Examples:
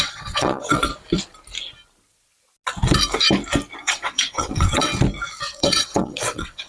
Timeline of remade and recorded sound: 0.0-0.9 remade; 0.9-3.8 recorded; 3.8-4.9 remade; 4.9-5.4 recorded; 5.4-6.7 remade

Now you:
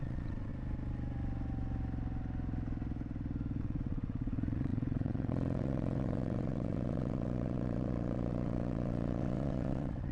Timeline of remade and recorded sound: 0.0-0.5 remade; 0.5-3.6 recorded; 3.6-10.1 remade

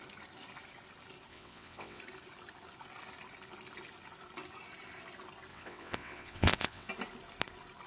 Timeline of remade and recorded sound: 0.0-1.3 recorded; 1.3-2.0 remade; 2.0-5.5 recorded; 5.5-6.9 remade; 6.9-7.9 recorded

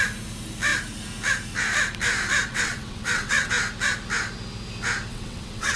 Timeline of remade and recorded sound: 0.0-2.5 recorded; 2.5-3.5 remade; 3.5-5.1 recorded; 5.1-5.8 remade

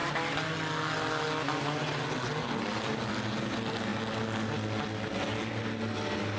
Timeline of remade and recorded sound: 0.0-6.4 recorded

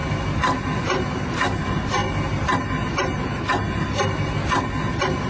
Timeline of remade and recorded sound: 0.0-5.3 recorded

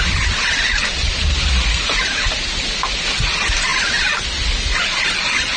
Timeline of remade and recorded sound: 0.0-5.6 recorded

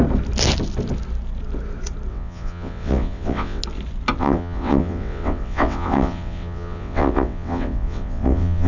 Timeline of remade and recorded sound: 0.0-2.1 recorded; 2.1-3.6 remade; 3.6-4.2 recorded; 4.2-8.7 remade